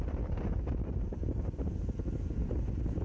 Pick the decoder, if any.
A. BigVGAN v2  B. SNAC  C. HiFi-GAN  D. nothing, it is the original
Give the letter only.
D